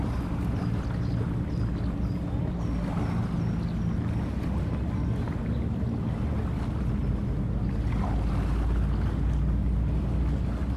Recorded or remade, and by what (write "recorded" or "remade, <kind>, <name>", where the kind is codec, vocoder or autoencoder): recorded